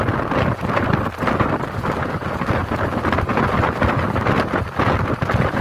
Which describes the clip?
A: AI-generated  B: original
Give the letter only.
B